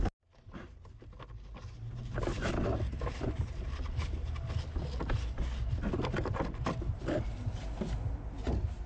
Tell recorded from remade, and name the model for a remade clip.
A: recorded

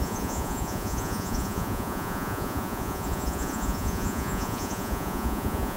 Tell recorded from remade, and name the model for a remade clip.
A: remade, vocoder, Vocos